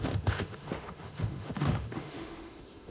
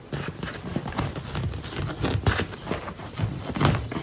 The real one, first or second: second